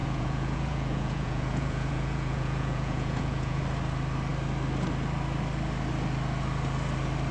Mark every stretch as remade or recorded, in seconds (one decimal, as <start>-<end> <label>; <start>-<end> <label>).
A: 0.0-3.6 remade; 3.6-7.3 recorded